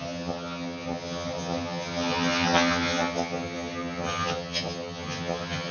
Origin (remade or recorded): remade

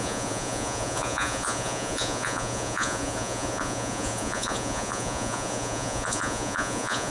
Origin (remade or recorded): remade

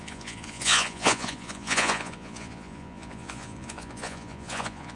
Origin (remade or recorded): remade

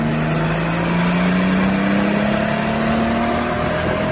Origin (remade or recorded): recorded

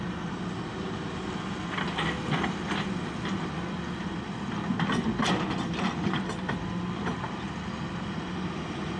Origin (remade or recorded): recorded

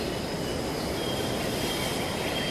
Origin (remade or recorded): recorded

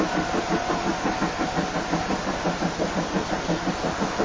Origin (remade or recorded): recorded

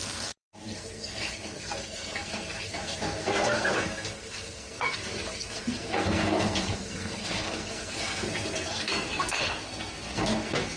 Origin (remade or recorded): remade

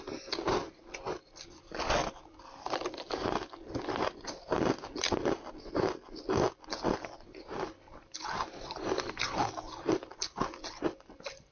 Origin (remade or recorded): recorded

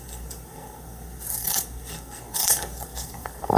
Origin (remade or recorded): remade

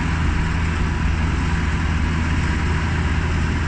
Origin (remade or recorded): recorded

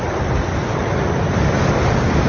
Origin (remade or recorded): recorded